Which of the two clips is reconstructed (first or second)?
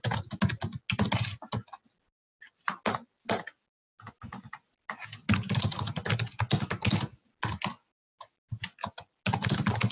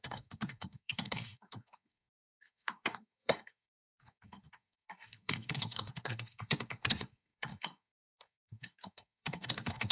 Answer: second